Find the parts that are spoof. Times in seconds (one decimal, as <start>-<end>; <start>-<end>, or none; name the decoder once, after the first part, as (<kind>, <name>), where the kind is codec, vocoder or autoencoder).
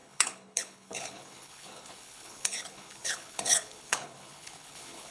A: 0.0-5.1 (codec, HILCodec)